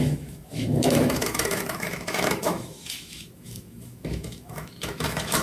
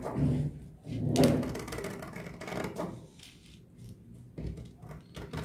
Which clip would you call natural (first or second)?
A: second